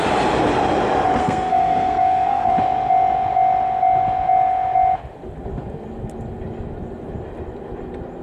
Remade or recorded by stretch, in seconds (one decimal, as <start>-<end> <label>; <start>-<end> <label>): 0.0-1.2 recorded; 1.2-2.5 remade; 2.5-8.2 recorded